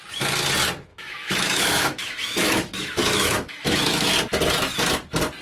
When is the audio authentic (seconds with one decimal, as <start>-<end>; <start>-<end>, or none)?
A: 0.0-0.9; 4.1-5.4

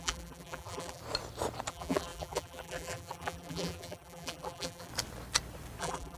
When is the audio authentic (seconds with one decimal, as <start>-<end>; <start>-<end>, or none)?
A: 1.0-1.7; 4.9-5.8

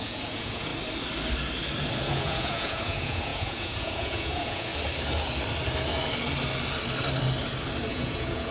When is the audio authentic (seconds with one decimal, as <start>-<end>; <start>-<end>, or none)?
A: 0.7-2.0; 4.7-7.9

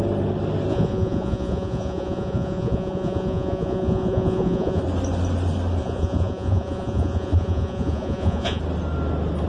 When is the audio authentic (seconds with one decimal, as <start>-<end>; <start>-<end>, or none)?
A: 0.0-0.7; 4.8-5.8; 8.6-9.5

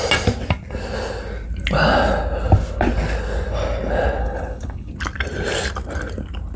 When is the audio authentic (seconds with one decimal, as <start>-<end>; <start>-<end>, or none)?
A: 0.0-4.2; 4.9-6.6

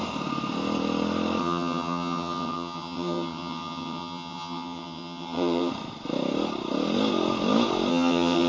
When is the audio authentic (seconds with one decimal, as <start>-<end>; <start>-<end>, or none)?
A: 0.0-1.4; 5.7-7.9

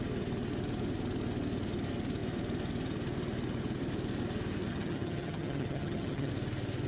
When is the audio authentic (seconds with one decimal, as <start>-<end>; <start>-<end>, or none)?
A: 0.0-4.7; 6.3-6.9

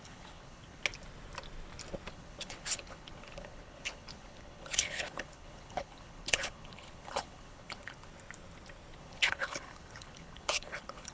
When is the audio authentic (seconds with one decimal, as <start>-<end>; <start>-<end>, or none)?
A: 0.8-2.1; 8.1-9.0